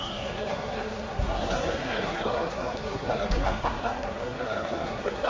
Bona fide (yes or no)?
no